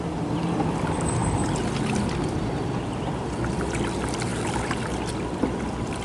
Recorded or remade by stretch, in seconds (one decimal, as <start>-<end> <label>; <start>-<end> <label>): 0.0-6.0 recorded